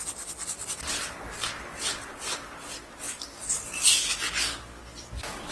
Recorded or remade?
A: recorded